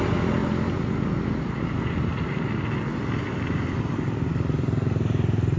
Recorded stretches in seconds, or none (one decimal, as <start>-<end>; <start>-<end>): 0.0-0.4; 3.8-5.6